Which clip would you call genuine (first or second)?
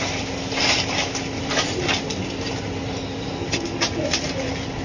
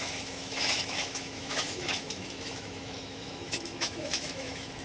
first